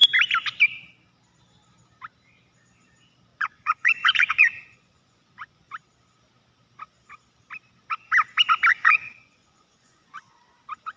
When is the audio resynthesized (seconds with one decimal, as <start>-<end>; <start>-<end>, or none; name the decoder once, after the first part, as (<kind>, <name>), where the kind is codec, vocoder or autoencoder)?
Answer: 3.3-5.7 (vocoder, Vocos); 8.7-10.2